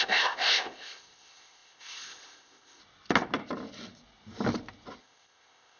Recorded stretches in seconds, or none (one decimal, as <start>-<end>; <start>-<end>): 2.8-5.0